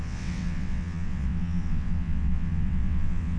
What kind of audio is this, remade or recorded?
remade